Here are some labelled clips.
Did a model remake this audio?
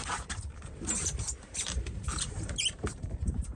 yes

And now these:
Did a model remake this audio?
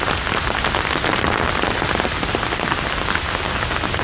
no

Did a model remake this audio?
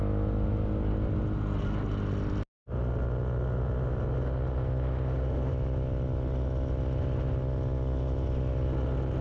no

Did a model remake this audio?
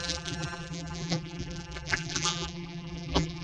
yes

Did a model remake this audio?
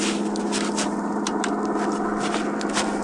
no